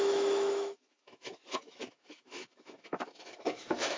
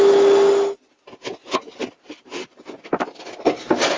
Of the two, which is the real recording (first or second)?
second